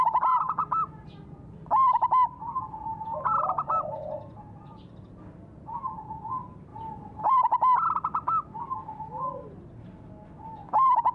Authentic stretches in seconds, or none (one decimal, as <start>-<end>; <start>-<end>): 0.0-11.1